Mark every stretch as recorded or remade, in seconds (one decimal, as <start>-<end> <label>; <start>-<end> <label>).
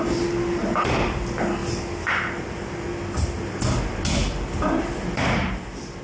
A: 0.0-6.0 recorded